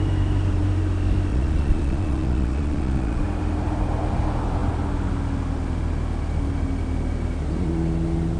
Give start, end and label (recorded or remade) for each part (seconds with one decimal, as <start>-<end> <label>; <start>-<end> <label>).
0.0-1.3 recorded; 1.3-3.2 remade; 3.2-8.4 recorded